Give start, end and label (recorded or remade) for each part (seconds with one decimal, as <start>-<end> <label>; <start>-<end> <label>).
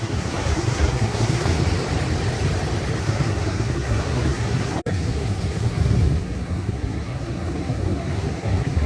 0.0-1.6 remade; 1.6-3.0 recorded; 3.0-8.9 remade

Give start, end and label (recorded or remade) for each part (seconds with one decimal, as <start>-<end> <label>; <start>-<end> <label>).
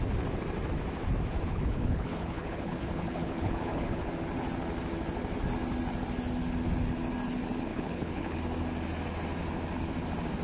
0.0-1.5 recorded; 1.5-4.1 remade; 4.1-7.7 recorded; 7.7-8.4 remade; 8.4-10.4 recorded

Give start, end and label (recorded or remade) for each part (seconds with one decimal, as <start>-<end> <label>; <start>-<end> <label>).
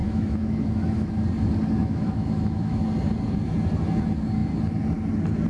0.0-1.1 remade; 1.1-1.8 recorded; 1.8-2.8 remade; 2.8-5.5 recorded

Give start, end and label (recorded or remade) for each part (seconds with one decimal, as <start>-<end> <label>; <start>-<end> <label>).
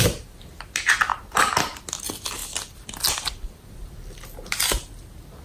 0.0-5.4 recorded